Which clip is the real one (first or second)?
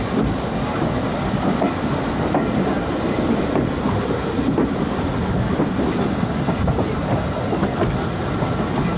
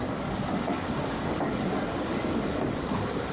first